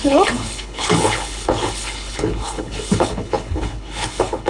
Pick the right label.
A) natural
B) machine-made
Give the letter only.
B